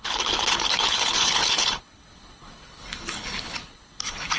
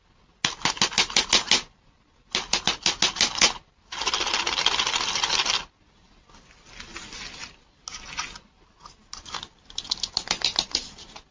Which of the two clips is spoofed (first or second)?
first